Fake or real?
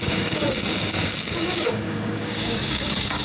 fake